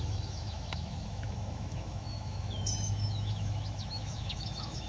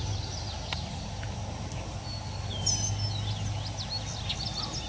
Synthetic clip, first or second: first